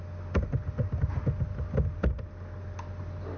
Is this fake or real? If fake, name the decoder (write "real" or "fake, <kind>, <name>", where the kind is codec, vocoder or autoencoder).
real